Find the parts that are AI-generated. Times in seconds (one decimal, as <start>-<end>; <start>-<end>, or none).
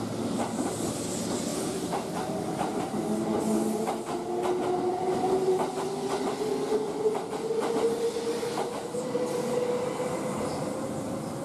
1.5-2.8